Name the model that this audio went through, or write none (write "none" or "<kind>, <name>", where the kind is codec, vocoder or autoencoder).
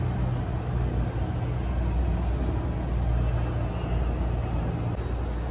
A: none